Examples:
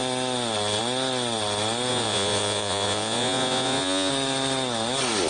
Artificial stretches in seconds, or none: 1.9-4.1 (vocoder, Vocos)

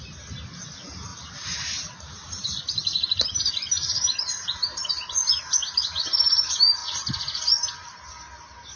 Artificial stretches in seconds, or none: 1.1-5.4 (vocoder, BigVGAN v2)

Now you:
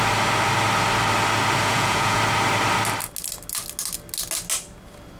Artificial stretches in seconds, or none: 1.6-2.2 (vocoder, Vocos)